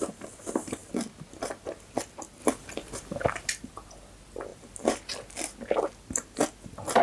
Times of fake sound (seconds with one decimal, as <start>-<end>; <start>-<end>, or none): 2.4-3.5